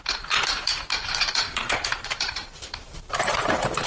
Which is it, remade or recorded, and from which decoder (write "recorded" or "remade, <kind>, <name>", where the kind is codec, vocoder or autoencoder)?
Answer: remade, vocoder, BigVGAN v2